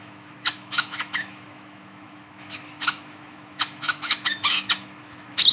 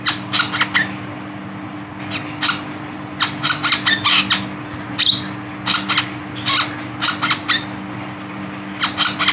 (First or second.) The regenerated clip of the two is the first